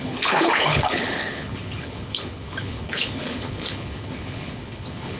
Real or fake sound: fake